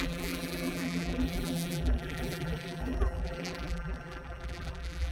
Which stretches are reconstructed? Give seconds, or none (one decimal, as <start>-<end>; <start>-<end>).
0.0-5.1